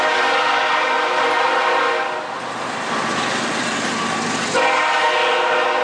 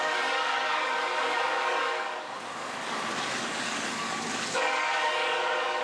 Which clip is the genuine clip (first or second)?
first